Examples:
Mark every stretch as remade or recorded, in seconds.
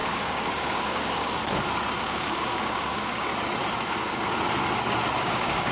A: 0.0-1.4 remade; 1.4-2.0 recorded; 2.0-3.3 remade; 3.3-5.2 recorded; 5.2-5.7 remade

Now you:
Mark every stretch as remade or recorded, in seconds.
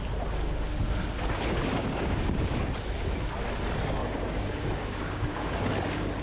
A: 0.0-1.7 recorded; 1.7-2.6 remade; 2.6-4.0 recorded; 4.0-5.7 remade; 5.7-6.2 recorded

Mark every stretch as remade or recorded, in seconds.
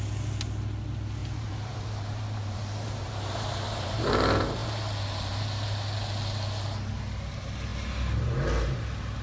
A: 0.0-1.2 recorded; 1.2-4.1 remade; 4.1-9.2 recorded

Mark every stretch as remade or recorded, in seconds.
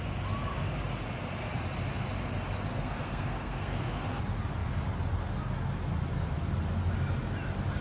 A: 0.0-2.7 recorded; 2.7-3.9 remade; 3.9-7.8 recorded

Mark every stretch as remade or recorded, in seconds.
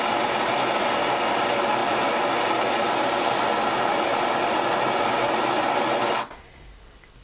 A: 0.0-7.2 recorded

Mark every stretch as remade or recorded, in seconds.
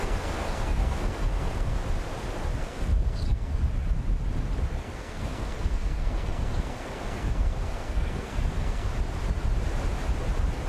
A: 0.0-1.8 remade; 1.8-2.6 recorded; 2.6-3.6 remade; 3.6-4.8 recorded; 4.8-8.9 remade; 8.9-10.7 recorded